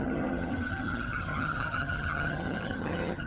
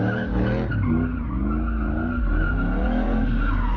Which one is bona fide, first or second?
second